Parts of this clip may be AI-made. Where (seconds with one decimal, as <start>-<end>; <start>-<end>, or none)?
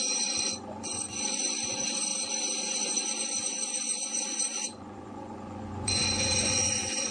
0.0-2.1; 2.6-7.1